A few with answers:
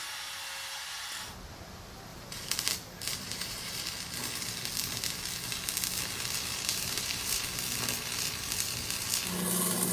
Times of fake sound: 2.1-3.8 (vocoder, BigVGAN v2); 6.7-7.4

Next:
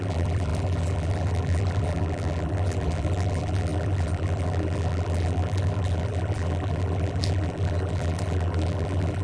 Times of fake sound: 0.0-9.2 (vocoder, BigVGAN v2)